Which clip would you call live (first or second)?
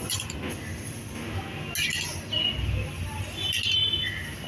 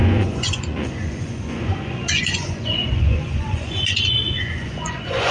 first